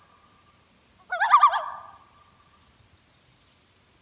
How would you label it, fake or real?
real